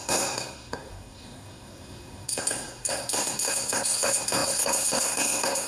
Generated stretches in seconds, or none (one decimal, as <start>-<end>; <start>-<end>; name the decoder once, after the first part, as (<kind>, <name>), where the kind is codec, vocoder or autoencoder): 0.0-5.7 (codec, SNAC)